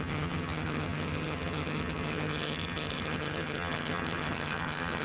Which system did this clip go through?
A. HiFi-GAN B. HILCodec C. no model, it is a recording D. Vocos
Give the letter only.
A